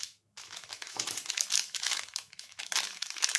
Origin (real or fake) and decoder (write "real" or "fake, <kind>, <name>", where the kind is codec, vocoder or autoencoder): fake, autoencoder, DAC-VAE